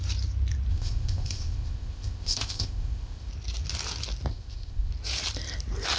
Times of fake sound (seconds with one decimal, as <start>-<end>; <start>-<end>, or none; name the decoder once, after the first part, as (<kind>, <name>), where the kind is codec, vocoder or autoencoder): 0.7-3.3 (codec, ZipCodec); 4.3-4.9